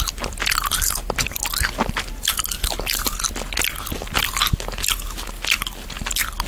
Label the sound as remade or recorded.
recorded